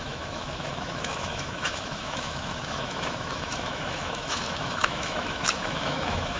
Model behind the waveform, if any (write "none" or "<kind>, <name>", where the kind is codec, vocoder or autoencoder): autoencoder, DAC-VAE